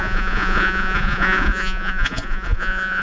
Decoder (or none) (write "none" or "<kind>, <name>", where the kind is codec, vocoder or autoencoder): vocoder, Vocos